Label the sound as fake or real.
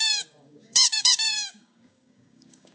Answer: fake